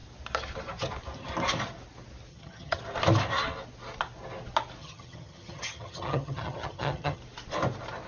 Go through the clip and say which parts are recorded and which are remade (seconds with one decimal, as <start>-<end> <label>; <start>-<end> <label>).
0.0-2.3 recorded; 2.3-2.8 remade; 2.8-4.8 recorded; 4.8-7.2 remade; 7.2-8.1 recorded